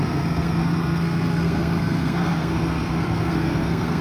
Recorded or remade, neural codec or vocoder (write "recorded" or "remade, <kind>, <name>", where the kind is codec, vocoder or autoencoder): remade, codec, SNAC